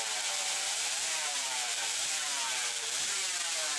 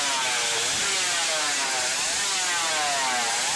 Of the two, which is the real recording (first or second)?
second